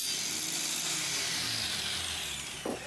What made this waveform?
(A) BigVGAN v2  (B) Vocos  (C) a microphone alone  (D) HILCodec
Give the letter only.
C